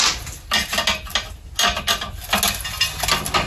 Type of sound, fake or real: real